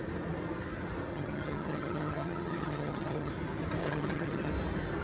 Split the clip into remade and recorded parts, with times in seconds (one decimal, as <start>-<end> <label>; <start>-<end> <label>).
0.0-1.1 recorded; 1.1-3.3 remade; 3.3-3.8 recorded; 3.8-4.5 remade; 4.5-5.0 recorded